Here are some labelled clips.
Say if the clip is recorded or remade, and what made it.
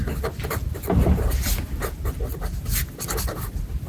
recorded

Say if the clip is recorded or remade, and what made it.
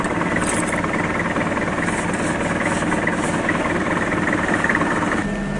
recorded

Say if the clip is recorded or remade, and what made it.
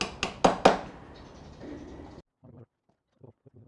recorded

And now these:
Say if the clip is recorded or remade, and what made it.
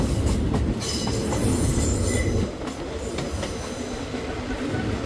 recorded